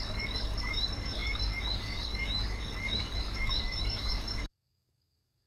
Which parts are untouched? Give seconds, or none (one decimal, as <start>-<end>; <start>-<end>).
none